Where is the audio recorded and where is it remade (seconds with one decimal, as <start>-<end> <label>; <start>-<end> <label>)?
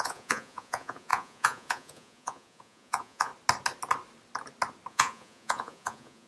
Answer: 0.0-3.3 remade; 3.3-4.9 recorded; 4.9-6.3 remade